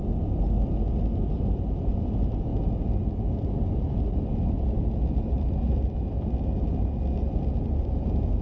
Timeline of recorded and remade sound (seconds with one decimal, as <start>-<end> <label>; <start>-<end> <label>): 0.0-8.4 recorded